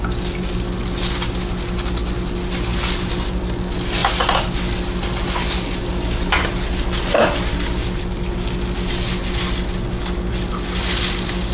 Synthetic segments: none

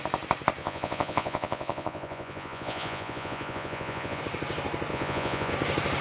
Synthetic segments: 0.6-4.2; 4.9-5.5

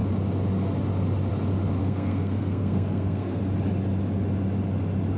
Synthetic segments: 1.8-3.4

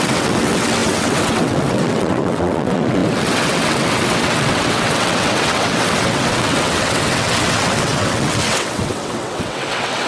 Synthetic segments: 0.0-10.1